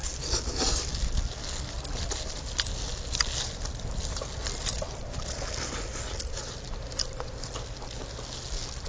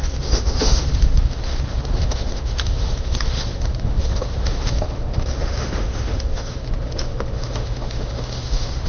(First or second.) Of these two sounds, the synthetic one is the second